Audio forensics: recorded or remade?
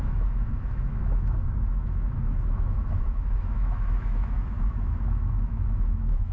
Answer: remade